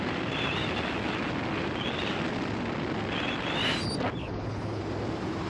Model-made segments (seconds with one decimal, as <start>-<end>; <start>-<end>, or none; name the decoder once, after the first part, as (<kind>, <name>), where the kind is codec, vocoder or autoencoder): 4.2-4.8 (codec, HILCodec)